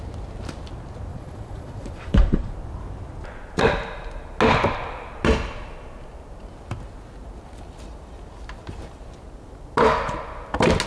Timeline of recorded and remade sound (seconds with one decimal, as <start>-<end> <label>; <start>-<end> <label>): 0.0-1.1 recorded; 1.1-2.5 remade; 2.5-10.9 recorded